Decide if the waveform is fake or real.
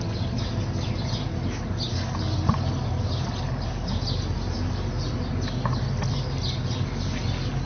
real